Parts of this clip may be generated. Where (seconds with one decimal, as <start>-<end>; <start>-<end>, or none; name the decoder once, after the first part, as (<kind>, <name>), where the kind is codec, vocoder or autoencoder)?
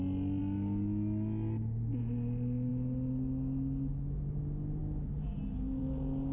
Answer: none